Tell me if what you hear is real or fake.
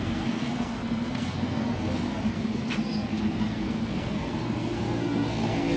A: fake